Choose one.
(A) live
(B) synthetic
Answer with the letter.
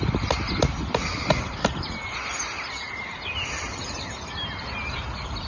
A